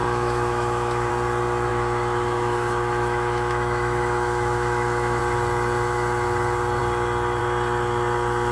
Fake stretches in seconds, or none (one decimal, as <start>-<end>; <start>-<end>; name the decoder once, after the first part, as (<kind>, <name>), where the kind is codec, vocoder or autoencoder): 0.0-1.1 (autoencoder, DAC-VAE); 1.7-5.2